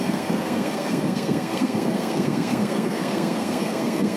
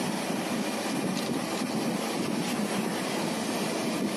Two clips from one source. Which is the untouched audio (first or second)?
second